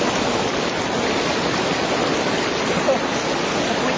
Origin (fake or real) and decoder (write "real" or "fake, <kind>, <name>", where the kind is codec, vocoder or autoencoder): real